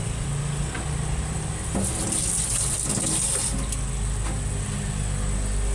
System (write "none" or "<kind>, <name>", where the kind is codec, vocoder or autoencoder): none